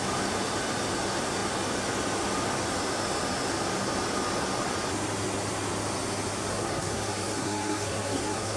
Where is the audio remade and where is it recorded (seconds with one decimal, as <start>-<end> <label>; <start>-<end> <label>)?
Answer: 0.0-6.5 recorded; 6.5-8.6 remade

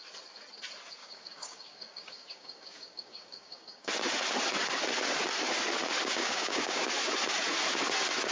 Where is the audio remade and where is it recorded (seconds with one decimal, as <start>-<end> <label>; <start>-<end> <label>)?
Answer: 0.0-1.0 recorded; 1.0-3.9 remade; 3.9-6.0 recorded; 6.0-6.8 remade; 6.8-8.3 recorded

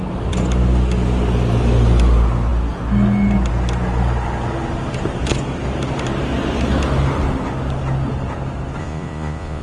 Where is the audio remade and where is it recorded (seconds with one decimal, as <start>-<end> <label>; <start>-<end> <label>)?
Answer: 0.0-8.8 recorded; 8.8-9.6 remade

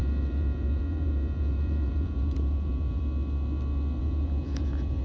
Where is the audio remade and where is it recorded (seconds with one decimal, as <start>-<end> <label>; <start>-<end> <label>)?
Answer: 0.0-3.0 remade; 3.0-4.0 recorded; 4.0-5.0 remade

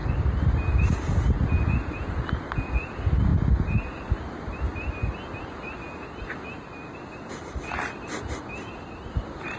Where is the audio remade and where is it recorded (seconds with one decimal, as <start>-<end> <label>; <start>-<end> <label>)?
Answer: 0.0-9.6 recorded